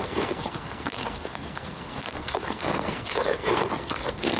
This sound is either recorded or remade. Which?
remade